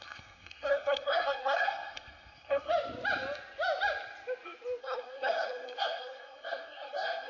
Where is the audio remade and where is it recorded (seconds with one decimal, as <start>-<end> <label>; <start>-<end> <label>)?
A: 0.0-2.7 remade; 2.7-4.8 recorded; 4.8-7.3 remade